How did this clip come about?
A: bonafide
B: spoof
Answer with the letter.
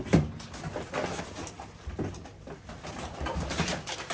A